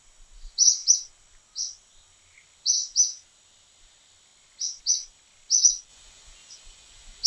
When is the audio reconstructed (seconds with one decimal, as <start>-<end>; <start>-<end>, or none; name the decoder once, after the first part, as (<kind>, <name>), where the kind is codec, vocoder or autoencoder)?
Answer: 5.9-7.3 (vocoder, Vocos)